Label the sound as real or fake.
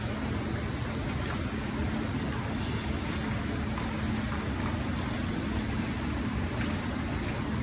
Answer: real